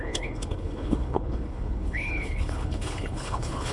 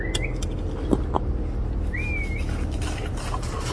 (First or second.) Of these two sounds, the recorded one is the second